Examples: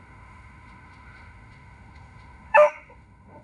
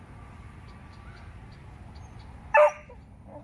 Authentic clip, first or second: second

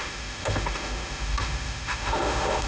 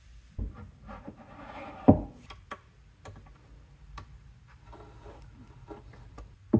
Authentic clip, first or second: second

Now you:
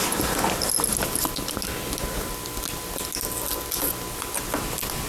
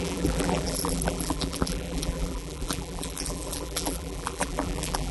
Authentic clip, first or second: first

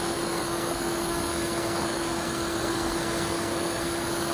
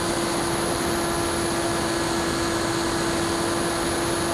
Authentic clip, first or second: second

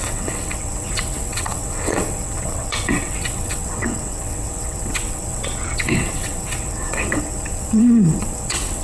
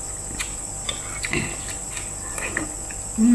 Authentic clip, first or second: second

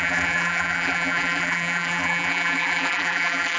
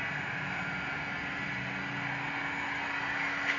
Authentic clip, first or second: second